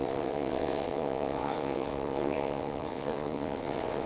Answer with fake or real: fake